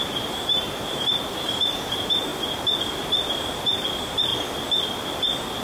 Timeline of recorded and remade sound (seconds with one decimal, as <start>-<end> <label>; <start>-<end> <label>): 0.0-2.3 remade; 2.3-2.8 recorded; 2.8-4.3 remade; 4.3-5.6 recorded